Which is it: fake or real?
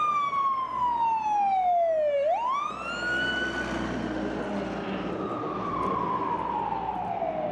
real